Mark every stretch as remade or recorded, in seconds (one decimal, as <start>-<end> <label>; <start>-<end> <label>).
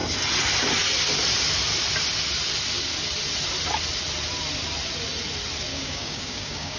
0.0-5.7 recorded; 5.7-6.8 remade